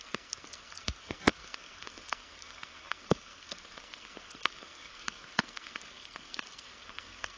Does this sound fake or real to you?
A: fake